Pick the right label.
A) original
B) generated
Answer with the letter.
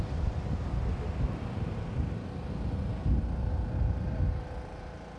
A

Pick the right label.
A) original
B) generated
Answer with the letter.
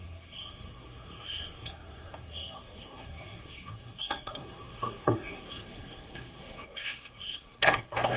B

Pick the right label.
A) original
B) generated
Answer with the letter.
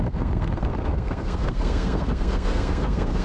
B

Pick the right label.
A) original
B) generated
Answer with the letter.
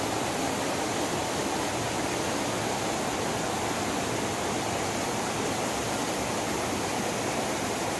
A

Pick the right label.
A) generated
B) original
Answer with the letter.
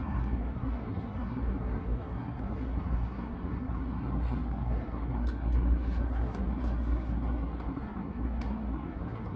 A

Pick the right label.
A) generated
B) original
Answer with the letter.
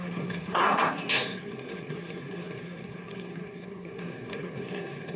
A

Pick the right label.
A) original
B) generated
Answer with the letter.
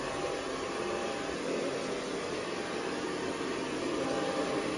A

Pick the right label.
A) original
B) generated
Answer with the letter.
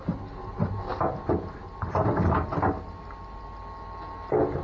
A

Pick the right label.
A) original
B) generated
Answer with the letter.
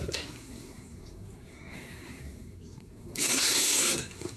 B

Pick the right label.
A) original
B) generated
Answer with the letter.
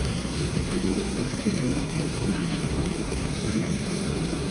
B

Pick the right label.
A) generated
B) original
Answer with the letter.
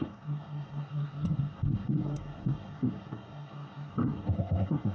A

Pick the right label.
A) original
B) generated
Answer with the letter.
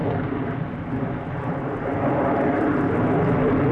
A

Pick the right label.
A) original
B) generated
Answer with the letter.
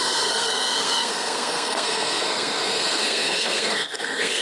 B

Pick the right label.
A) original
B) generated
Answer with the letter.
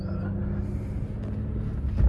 A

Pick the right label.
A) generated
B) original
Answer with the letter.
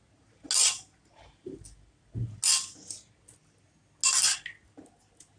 B